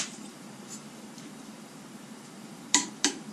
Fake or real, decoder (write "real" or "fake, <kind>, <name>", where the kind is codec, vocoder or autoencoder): fake, vocoder, BigVGAN v2